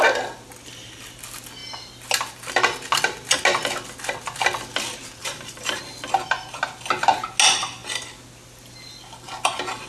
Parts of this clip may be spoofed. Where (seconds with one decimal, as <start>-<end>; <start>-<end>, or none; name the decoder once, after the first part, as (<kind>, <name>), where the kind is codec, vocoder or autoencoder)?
5.2-5.8 (vocoder, BigVGAN v2)